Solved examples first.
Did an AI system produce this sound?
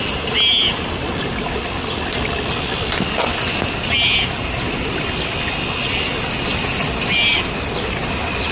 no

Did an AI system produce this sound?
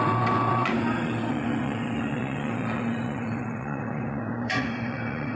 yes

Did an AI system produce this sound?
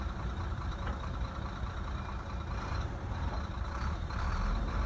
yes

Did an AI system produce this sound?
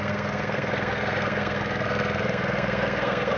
yes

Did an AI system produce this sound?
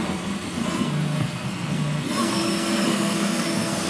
yes